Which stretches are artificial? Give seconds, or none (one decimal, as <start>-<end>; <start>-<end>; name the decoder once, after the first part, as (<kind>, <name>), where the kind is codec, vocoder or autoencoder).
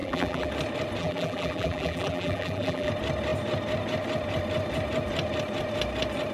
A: 0.0-0.5 (vocoder, BigVGAN v2); 1.0-2.9